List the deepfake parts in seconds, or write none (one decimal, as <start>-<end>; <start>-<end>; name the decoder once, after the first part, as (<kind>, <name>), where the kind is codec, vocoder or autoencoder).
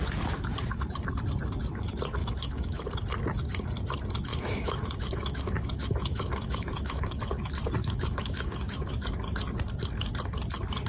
2.2-2.9 (autoencoder, DAC-VAE); 4.3-7.2; 7.8-8.9